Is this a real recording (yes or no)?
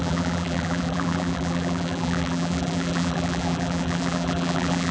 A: no